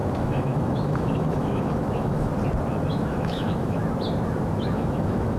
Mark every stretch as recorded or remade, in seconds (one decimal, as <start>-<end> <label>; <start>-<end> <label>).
0.0-2.3 remade; 2.3-2.9 recorded; 2.9-3.8 remade; 3.8-4.6 recorded; 4.6-5.4 remade